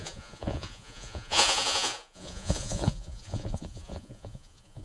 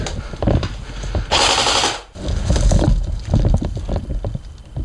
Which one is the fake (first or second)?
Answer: first